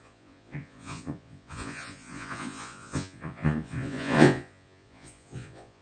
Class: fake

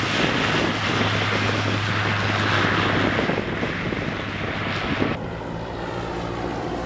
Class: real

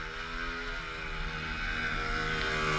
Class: real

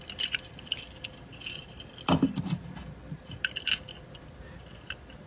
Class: real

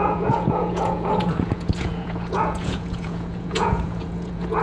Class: fake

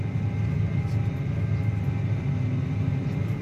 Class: real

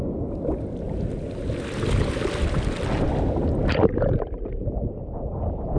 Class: real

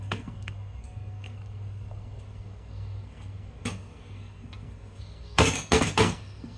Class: fake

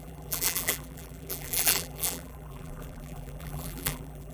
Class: fake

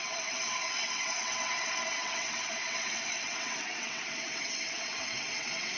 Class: fake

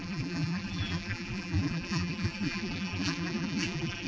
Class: fake